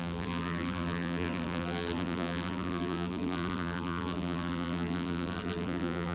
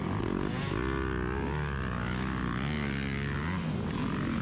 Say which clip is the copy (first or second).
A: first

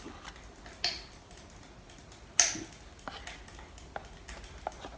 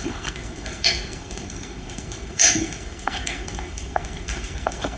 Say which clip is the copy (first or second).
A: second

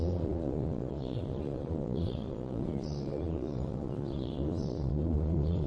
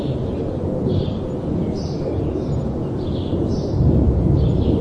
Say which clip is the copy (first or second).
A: first